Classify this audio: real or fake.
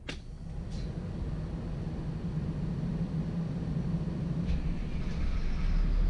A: real